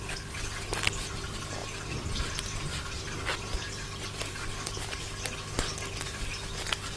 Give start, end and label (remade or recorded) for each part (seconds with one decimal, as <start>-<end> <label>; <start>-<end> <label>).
0.0-7.0 recorded